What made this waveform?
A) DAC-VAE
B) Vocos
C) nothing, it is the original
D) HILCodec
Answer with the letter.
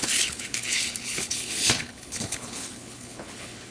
D